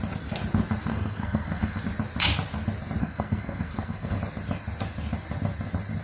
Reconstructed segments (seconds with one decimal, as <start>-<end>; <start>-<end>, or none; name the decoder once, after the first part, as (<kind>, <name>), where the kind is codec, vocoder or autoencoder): 0.9-1.8 (codec, SNAC); 3.0-4.2